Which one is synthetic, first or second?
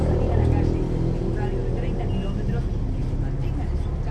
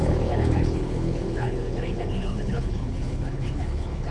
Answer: second